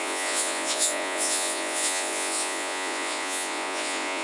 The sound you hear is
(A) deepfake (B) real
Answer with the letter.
A